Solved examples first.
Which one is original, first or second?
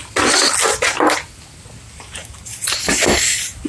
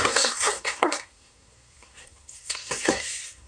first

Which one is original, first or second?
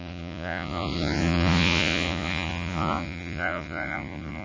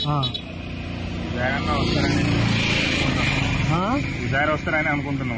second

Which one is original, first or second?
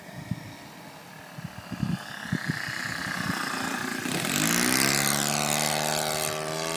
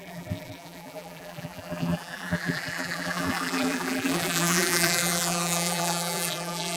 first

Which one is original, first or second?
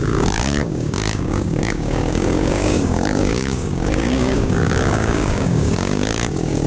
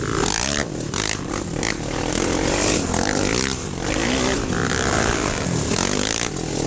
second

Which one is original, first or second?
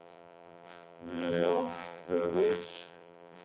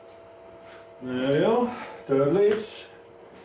second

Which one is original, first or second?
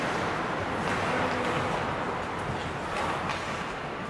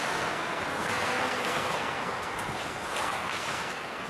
first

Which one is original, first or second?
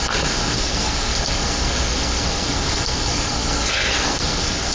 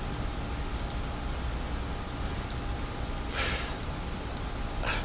second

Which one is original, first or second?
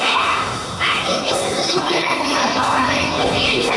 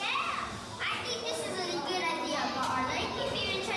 second